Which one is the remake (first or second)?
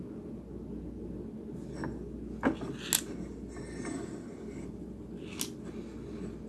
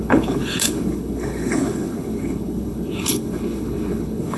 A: second